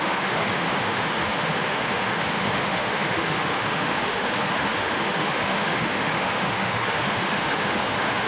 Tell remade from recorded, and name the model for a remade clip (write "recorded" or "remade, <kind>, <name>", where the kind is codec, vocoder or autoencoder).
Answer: remade, autoencoder, DAC-VAE